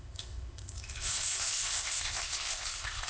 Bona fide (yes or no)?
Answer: no